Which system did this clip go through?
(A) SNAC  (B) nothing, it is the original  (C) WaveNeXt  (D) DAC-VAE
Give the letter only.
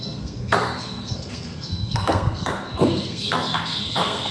A